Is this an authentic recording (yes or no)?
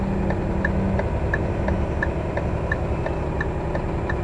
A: yes